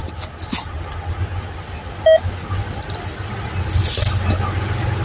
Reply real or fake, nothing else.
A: real